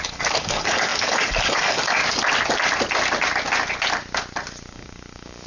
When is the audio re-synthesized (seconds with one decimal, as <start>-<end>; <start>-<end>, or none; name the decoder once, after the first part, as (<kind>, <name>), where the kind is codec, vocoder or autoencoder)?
0.0-2.0 (codec, DAC); 4.7-5.5